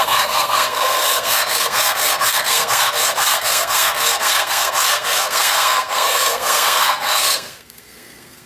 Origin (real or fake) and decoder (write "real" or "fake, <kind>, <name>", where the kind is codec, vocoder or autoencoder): fake, codec, SNAC